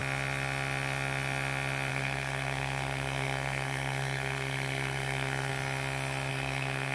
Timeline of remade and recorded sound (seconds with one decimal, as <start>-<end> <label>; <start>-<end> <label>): 0.0-1.9 recorded; 1.9-5.5 remade; 5.5-6.3 recorded; 6.3-6.9 remade